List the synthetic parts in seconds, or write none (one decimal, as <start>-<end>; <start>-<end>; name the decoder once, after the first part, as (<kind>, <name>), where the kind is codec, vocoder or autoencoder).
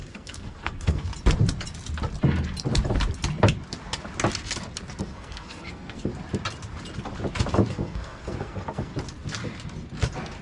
0.0-1.1 (codec, SNAC); 5.0-6.1; 7.7-8.9